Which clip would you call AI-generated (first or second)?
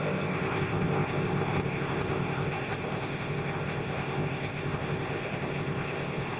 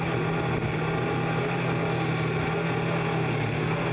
first